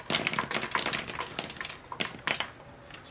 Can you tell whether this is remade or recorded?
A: recorded